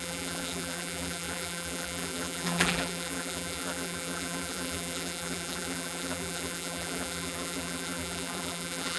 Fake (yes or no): yes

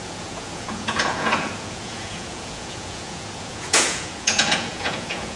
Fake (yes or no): yes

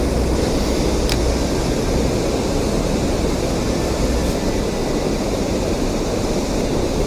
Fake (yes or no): no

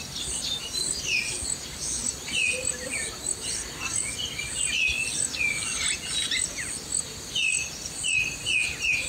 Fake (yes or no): no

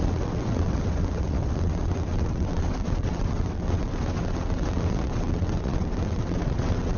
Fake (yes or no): yes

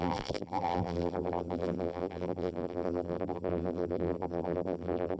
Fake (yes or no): yes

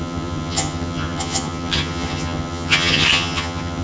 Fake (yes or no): yes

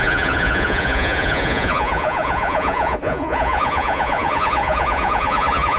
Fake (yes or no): yes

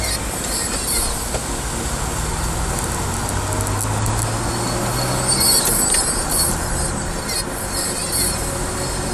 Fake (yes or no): no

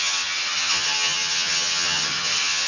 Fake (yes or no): yes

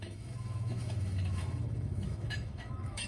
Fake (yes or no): yes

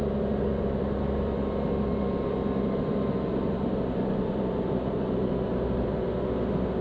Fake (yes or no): no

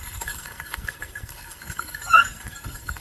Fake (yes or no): yes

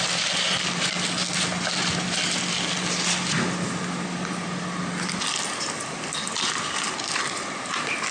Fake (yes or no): no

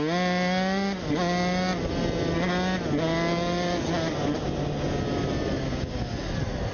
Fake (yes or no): no